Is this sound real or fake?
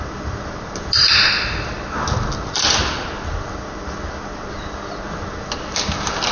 real